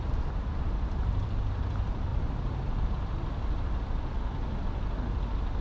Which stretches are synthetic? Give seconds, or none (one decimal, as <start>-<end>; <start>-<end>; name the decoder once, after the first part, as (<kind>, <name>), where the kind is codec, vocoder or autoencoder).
2.1-4.2 (vocoder, BigVGAN v2)